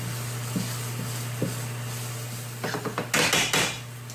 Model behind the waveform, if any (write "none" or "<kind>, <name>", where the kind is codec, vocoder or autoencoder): none